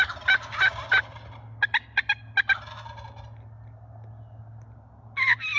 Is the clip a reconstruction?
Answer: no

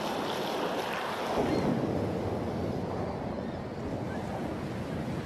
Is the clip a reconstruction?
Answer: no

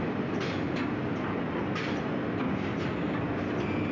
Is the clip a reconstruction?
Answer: no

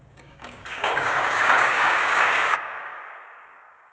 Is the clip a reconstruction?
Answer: yes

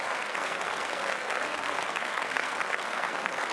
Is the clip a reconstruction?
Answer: yes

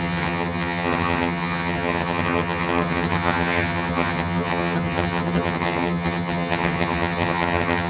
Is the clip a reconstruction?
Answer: yes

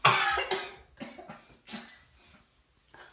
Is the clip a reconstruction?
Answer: no